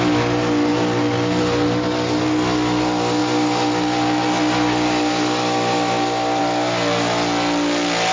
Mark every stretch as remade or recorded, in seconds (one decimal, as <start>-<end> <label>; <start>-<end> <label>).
0.0-8.1 recorded